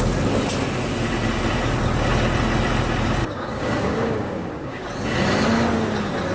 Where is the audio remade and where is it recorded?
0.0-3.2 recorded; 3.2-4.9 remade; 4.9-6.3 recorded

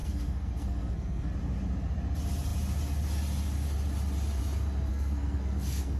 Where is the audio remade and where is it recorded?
0.0-1.3 remade; 1.3-4.9 recorded; 4.9-6.0 remade

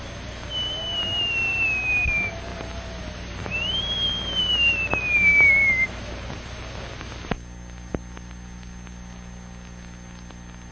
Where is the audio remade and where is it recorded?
0.0-10.7 recorded

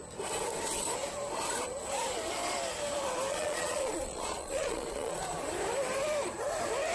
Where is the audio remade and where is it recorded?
0.0-3.3 recorded; 3.3-5.2 remade; 5.2-6.9 recorded

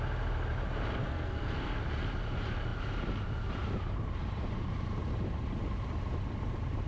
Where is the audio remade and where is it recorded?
0.0-1.0 recorded; 1.0-1.8 remade; 1.8-6.9 recorded